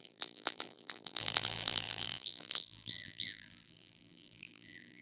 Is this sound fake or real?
fake